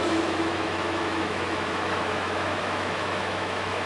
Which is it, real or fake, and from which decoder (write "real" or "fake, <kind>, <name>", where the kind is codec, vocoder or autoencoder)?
fake, autoencoder, DAC-VAE